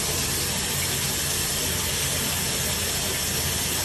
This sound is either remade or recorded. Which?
recorded